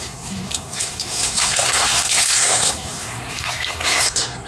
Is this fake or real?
fake